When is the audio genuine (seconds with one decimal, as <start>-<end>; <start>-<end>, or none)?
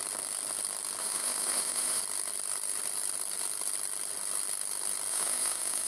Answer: 0.0-1.0; 2.0-5.1